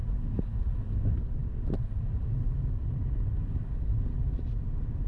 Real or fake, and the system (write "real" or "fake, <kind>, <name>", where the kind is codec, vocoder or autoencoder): real